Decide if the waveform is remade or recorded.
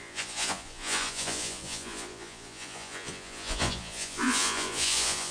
remade